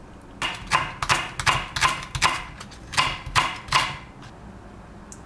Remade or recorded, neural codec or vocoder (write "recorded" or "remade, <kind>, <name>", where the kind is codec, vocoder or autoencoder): recorded